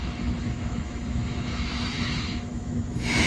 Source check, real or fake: fake